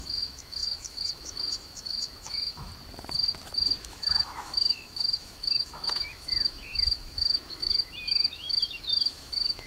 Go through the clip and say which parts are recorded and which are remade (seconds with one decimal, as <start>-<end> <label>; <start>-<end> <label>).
0.0-2.7 remade; 2.7-3.8 recorded; 3.8-9.7 remade